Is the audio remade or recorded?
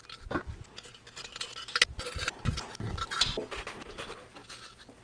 recorded